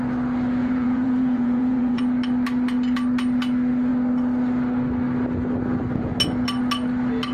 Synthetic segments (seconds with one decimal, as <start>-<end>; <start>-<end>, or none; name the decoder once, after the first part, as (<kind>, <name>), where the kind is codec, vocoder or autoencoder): 0.6-2.0 (vocoder, Vocos)